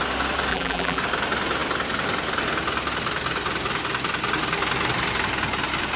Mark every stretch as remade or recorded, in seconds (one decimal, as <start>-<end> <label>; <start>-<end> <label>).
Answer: 0.0-0.5 recorded; 0.5-1.0 remade; 1.0-6.0 recorded